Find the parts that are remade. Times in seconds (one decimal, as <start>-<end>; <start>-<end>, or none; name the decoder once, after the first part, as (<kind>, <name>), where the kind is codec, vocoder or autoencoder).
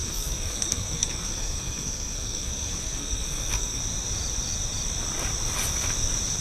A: 0.0-3.8 (codec, SNAC)